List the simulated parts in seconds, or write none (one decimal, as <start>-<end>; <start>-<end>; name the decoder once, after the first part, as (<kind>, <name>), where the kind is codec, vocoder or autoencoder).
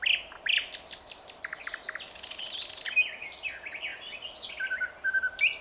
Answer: none